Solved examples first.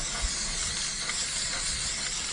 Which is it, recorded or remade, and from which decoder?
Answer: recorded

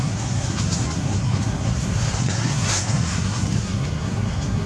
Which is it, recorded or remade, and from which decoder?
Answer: remade, codec, SNAC